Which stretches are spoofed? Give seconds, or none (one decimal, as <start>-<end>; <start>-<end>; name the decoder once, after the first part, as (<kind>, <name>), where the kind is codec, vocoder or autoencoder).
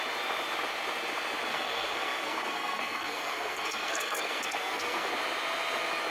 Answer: 1.5-5.1 (codec, SNAC)